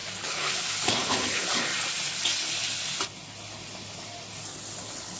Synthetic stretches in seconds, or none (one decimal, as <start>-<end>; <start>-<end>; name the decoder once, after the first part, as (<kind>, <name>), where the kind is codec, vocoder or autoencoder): 0.0-1.7 (codec, HILCodec); 4.8-5.2